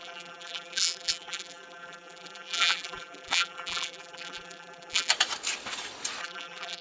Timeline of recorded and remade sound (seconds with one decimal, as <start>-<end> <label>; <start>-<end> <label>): 0.0-5.1 remade; 5.1-6.2 recorded; 6.2-6.8 remade